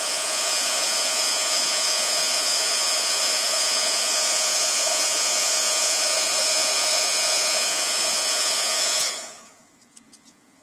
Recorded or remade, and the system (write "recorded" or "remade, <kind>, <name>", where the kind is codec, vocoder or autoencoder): remade, vocoder, Vocos